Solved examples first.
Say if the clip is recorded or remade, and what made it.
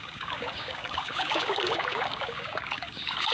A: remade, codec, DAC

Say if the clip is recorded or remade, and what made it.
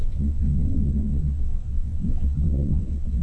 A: remade, vocoder, WaveNeXt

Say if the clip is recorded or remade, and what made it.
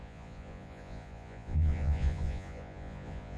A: remade, vocoder, Vocos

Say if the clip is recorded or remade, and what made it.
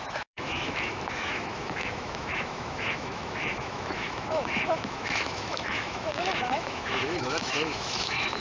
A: remade, autoencoder, DAC-VAE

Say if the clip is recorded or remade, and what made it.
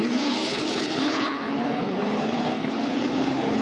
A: remade, codec, HILCodec